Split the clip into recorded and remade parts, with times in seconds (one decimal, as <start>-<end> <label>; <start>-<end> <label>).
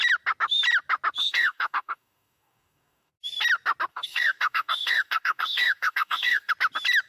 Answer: 0.0-1.2 recorded; 1.2-3.1 remade; 3.1-3.9 recorded; 3.9-6.5 remade; 6.5-7.1 recorded